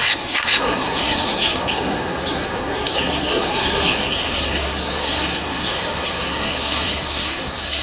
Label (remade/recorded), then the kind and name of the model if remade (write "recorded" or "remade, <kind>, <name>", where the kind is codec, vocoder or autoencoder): remade, codec, SNAC